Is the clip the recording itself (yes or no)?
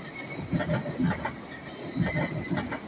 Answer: yes